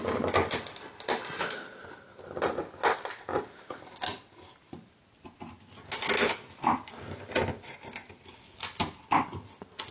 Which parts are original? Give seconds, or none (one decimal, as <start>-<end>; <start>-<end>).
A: 0.0-9.9